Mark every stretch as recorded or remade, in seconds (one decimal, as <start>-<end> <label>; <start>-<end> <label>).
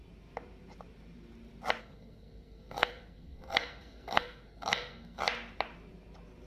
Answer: 0.0-1.8 recorded; 1.8-5.2 remade; 5.2-6.5 recorded